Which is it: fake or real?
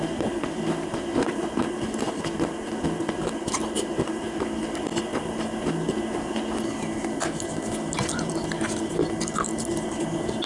real